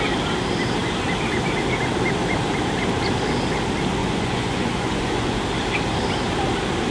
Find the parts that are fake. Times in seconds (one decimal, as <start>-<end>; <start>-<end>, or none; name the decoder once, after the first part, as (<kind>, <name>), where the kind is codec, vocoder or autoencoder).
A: 4.0-5.4 (vocoder, Vocos)